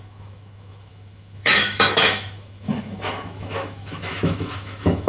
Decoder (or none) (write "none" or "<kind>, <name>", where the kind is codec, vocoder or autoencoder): autoencoder, DAC-VAE